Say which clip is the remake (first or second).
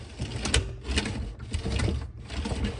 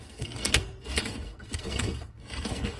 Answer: second